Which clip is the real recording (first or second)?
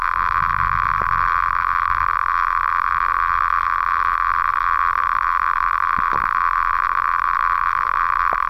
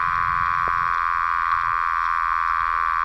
second